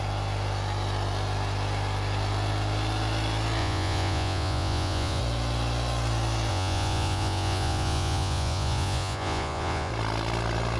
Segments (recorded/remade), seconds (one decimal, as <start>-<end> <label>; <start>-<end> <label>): 0.0-3.6 recorded; 3.6-5.2 remade; 5.2-6.5 recorded; 6.5-9.9 remade; 9.9-10.8 recorded